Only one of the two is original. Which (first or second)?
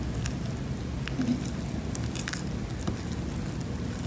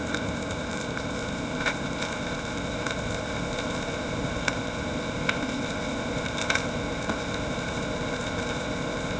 first